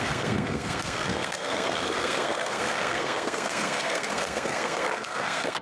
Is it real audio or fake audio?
fake